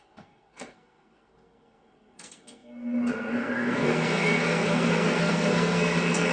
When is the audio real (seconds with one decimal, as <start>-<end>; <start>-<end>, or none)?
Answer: none